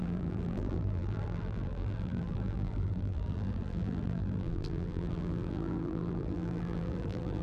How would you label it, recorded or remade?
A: remade